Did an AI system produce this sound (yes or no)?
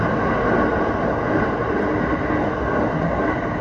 no